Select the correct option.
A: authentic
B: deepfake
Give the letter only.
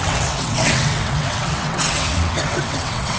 B